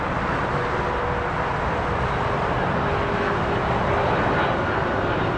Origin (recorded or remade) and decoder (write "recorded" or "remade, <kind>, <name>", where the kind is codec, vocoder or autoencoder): recorded